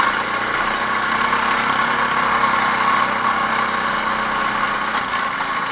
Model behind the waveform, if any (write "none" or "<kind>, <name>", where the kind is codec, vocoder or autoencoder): none